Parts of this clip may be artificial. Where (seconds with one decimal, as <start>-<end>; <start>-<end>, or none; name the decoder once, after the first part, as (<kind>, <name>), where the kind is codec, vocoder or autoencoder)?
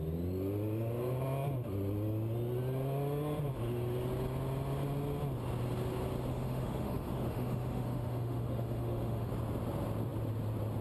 6.3-9.3 (autoencoder, DAC-VAE)